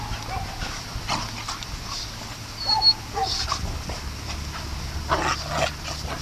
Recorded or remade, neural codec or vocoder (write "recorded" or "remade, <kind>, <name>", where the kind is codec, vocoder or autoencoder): recorded